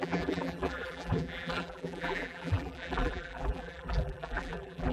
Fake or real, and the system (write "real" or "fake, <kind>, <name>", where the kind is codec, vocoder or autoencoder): fake, vocoder, BigVGAN v2